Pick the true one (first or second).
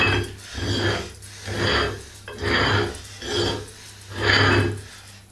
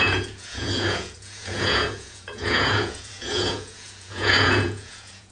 first